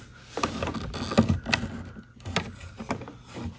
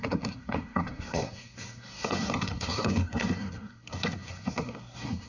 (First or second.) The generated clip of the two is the second